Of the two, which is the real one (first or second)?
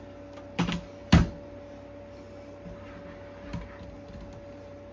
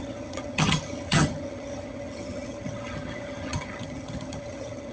first